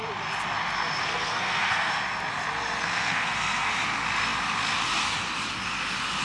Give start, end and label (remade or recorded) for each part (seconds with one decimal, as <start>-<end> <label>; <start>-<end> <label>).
0.0-1.0 recorded; 1.0-1.9 remade; 1.9-2.8 recorded; 2.8-3.7 remade; 3.7-6.2 recorded